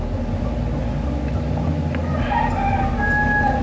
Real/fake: real